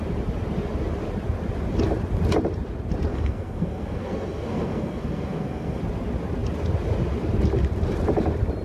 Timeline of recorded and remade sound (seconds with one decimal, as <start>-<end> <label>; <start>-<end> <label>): 0.0-3.1 recorded; 3.1-5.8 remade; 5.8-8.6 recorded